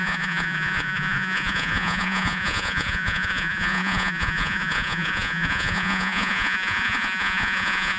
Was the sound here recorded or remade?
remade